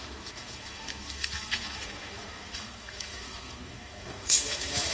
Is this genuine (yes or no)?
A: no